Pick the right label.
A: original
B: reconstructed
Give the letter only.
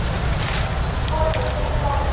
A